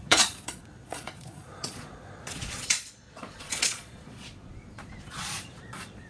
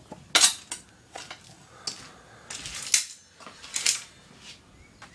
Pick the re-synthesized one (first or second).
first